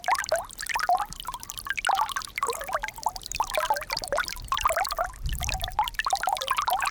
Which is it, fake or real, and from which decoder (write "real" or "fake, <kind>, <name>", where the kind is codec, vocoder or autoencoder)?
real